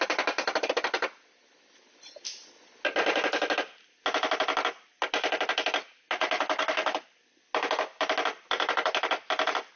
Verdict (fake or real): real